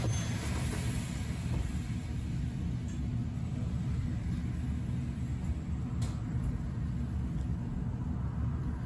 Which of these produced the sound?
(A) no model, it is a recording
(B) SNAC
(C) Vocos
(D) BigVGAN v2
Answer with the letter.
A